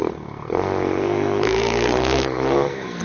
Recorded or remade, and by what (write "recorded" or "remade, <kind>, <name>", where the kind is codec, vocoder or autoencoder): remade, codec, SNAC